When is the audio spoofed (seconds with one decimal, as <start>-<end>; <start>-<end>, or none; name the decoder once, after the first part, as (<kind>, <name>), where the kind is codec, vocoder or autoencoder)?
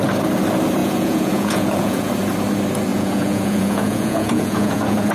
0.8-2.1 (vocoder, Vocos); 2.9-5.1